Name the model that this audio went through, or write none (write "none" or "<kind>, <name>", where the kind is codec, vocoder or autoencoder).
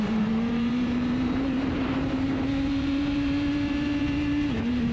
vocoder, BigVGAN v2